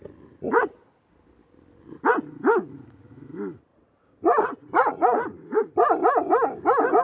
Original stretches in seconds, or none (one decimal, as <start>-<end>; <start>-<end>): 0.0-3.7; 5.6-7.0